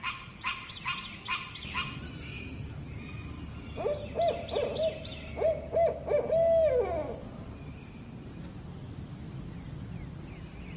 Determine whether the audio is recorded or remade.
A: recorded